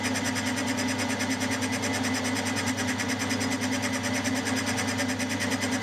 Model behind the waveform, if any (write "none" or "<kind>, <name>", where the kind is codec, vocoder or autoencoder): none